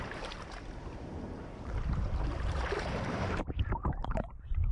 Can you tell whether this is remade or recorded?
remade